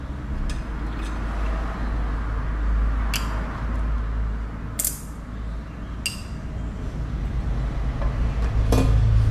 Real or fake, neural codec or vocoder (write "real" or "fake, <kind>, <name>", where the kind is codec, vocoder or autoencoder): real